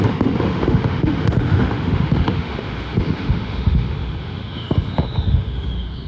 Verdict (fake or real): fake